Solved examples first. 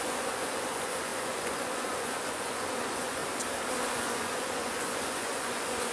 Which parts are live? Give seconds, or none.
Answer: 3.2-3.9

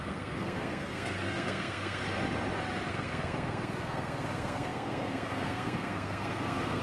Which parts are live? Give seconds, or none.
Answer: 2.0-2.9

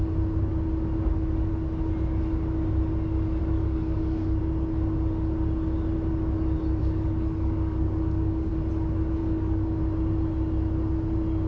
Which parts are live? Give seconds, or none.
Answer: 0.0-3.4; 4.4-6.8; 8.5-9.2; 9.8-11.5

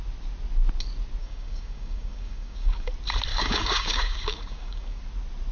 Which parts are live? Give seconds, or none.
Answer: 0.0-1.2; 2.9-3.3; 5.0-5.5

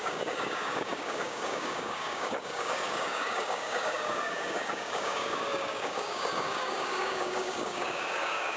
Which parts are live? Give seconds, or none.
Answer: none

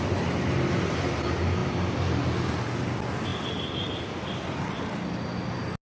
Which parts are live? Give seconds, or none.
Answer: 0.0-5.9

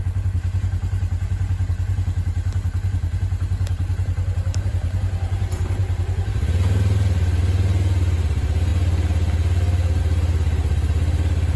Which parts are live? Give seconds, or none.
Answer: 0.0-11.6

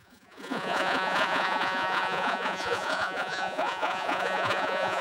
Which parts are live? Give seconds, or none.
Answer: none